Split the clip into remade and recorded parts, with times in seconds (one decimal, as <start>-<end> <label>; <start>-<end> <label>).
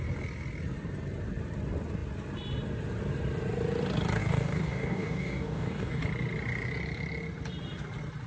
0.0-4.2 recorded; 4.2-6.0 remade; 6.0-8.3 recorded